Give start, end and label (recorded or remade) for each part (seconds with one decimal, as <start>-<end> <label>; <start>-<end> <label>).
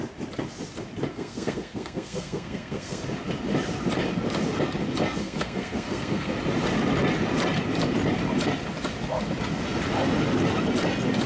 0.0-1.1 recorded; 1.1-3.0 remade; 3.0-5.2 recorded; 5.2-6.3 remade; 6.3-11.3 recorded